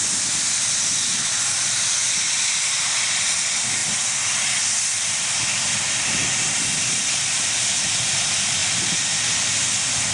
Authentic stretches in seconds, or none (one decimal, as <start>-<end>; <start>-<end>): 0.0-10.1